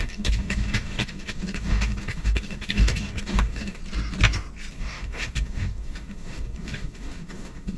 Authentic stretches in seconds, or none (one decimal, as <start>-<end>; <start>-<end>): 3.8-4.7